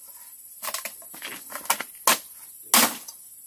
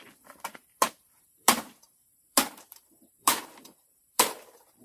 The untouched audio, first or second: first